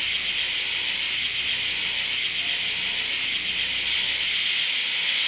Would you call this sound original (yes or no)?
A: yes